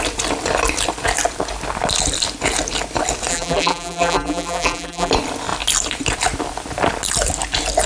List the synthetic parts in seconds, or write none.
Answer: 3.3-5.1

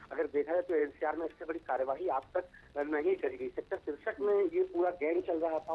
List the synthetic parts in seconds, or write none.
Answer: none

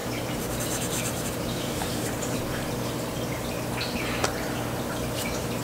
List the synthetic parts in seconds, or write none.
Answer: 0.0-2.4

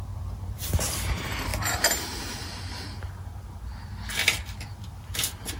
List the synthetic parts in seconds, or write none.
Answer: 0.0-1.5; 4.8-5.6

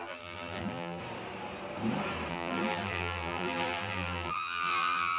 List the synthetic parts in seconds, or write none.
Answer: 0.0-1.0; 2.3-5.2

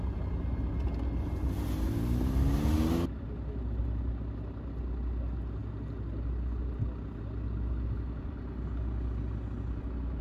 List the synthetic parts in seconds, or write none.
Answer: none

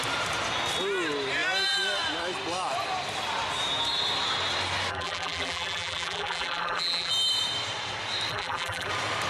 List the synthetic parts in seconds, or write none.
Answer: 4.9-7.1; 8.3-8.9

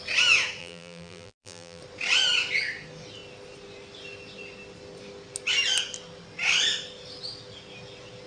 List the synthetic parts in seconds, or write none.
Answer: 0.6-1.8